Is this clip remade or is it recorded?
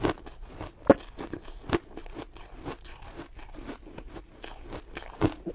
recorded